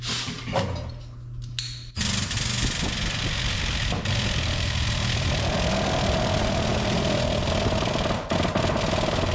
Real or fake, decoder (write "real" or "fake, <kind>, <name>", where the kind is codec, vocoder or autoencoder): real